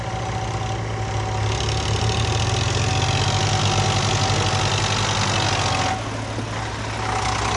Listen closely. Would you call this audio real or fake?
real